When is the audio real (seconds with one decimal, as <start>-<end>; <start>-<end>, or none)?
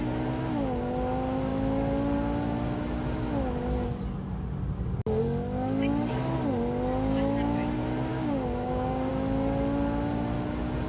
0.0-8.1; 9.1-10.9